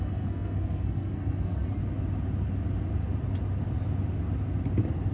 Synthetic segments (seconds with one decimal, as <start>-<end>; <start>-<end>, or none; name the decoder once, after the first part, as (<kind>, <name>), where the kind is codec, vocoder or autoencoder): 0.0-1.8 (codec, SNAC)